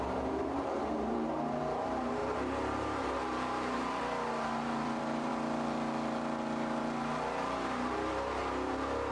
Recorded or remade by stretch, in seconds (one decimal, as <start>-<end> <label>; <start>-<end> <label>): 0.0-9.1 remade